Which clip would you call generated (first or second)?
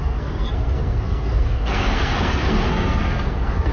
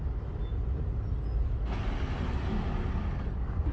first